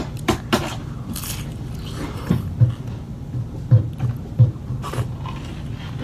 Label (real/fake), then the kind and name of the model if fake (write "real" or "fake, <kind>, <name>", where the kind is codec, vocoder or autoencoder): real